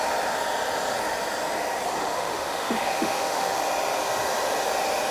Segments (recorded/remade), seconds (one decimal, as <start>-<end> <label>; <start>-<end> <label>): 0.0-2.0 recorded; 2.0-3.6 remade; 3.6-5.1 recorded

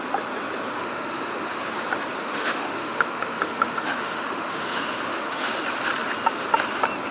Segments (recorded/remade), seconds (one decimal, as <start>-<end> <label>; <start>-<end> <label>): 0.0-0.8 recorded; 0.8-1.7 remade; 1.7-2.2 recorded; 2.2-5.5 remade; 5.5-7.1 recorded

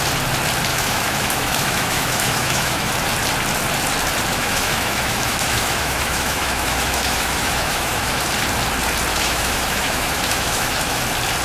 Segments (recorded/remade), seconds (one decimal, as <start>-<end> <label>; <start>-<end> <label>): 0.0-0.7 recorded; 0.7-2.9 remade; 2.9-4.3 recorded; 4.3-8.2 remade; 8.2-9.1 recorded; 9.1-11.0 remade; 11.0-11.4 recorded

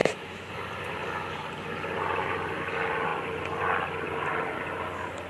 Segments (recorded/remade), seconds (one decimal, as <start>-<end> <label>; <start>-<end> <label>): 0.0-0.5 remade; 0.5-5.3 recorded